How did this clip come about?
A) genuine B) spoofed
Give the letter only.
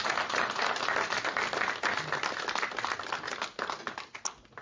A